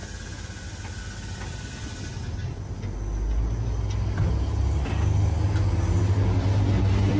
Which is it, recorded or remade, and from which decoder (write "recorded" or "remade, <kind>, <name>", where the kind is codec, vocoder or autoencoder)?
recorded